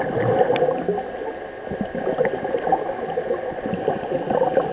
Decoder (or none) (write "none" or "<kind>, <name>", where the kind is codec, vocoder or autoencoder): none